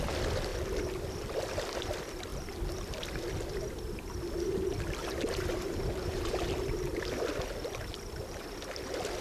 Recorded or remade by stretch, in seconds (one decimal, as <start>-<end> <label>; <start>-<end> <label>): 0.0-5.0 recorded; 5.0-6.9 remade; 6.9-9.2 recorded